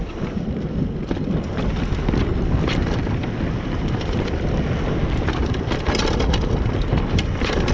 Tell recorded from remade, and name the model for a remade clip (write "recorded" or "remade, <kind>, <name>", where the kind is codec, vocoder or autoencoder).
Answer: recorded